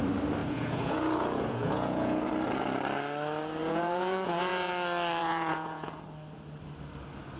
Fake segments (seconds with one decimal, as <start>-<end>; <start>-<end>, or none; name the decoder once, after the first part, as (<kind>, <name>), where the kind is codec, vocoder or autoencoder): 0.4-2.2 (vocoder, Vocos); 3.6-4.7; 5.2-5.9